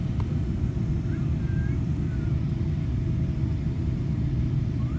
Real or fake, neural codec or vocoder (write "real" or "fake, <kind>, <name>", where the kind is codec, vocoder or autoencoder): fake, vocoder, BigVGAN v2